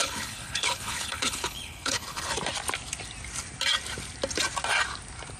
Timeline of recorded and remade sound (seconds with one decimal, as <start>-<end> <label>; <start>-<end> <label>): 0.0-2.3 remade; 2.3-5.4 recorded